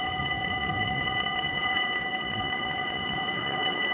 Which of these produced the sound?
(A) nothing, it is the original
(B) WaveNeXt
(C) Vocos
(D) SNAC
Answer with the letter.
B